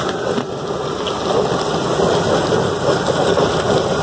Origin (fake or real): real